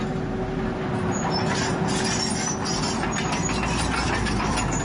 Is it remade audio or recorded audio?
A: recorded